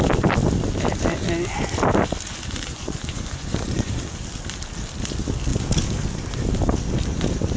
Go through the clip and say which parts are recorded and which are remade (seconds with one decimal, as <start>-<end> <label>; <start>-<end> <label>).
0.0-2.3 recorded; 2.3-3.9 remade; 3.9-7.6 recorded